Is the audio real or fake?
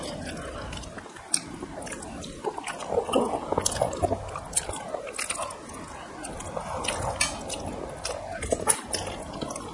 real